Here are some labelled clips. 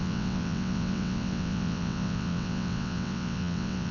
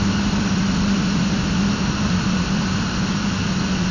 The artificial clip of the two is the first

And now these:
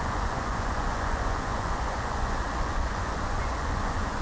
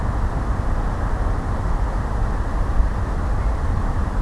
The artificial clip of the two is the first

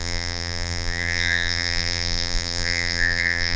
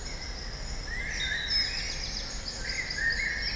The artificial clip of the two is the first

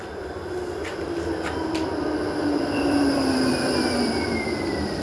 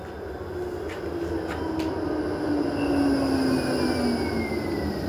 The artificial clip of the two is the first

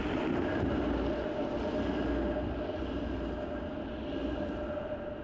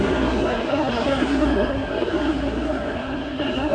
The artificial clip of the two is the second